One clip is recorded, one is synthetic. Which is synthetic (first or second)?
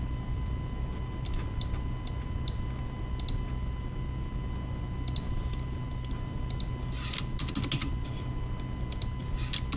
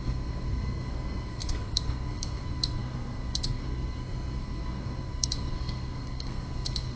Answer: second